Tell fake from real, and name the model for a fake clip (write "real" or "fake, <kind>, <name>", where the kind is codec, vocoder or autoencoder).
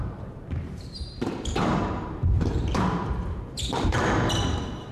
fake, vocoder, BigVGAN v2